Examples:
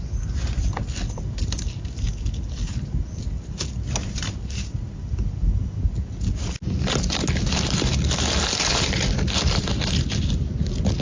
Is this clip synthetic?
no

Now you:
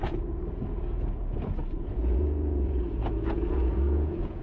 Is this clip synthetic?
yes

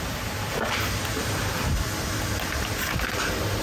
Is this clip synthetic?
no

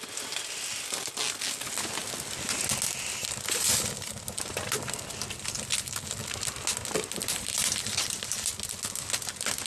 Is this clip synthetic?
no